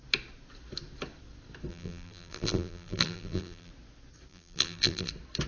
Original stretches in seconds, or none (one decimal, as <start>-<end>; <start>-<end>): 0.0-1.7; 3.7-4.3; 5.1-5.5